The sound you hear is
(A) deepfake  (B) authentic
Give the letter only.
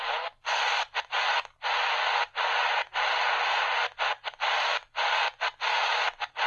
B